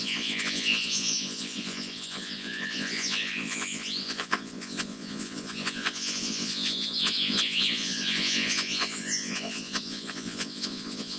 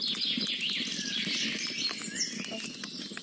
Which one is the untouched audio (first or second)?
second